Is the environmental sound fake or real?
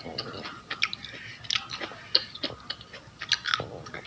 real